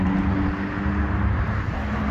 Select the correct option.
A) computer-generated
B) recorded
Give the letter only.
B